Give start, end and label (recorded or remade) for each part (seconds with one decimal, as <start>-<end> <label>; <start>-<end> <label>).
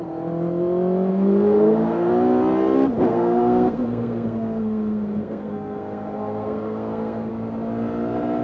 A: 0.0-1.1 recorded; 1.1-2.1 remade; 2.1-3.1 recorded; 3.1-7.3 remade; 7.3-8.4 recorded